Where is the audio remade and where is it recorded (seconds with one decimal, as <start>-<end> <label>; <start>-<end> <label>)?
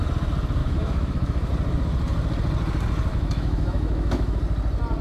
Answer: 0.0-0.6 recorded; 0.6-1.5 remade; 1.5-3.1 recorded; 3.1-4.4 remade; 4.4-5.0 recorded